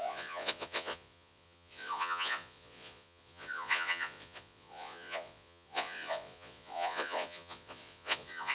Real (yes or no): no